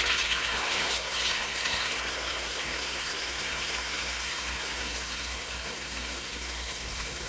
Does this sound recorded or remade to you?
remade